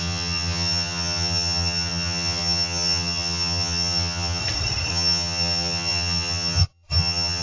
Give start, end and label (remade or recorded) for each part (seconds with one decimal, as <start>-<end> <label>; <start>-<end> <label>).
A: 0.0-4.4 remade; 4.4-4.9 recorded; 4.9-7.4 remade